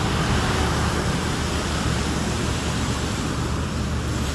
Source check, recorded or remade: remade